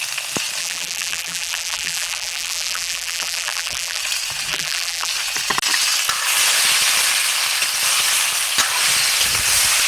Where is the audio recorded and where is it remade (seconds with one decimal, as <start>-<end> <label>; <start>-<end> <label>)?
0.0-0.6 recorded; 0.6-4.0 remade; 4.0-4.5 recorded; 4.5-5.1 remade; 5.1-9.9 recorded